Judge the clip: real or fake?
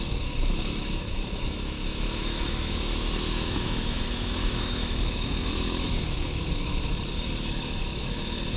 fake